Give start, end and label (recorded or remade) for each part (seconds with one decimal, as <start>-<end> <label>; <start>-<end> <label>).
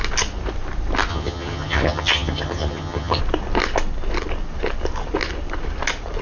0.0-1.1 recorded; 1.1-3.2 remade; 3.2-6.2 recorded